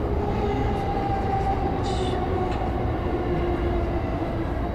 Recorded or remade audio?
recorded